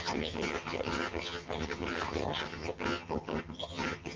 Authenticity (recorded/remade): remade